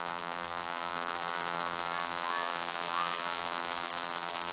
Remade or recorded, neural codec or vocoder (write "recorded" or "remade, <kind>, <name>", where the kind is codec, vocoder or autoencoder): remade, vocoder, BigVGAN v2